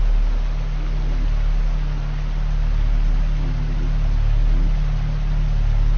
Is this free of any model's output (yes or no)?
yes